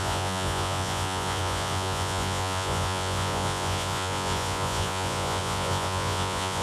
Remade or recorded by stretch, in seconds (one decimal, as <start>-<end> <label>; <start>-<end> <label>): 0.0-6.6 remade